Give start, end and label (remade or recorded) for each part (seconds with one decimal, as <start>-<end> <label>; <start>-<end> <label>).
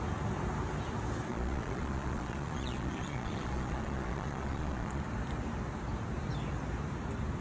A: 0.0-1.3 recorded; 1.3-5.0 remade; 5.0-7.4 recorded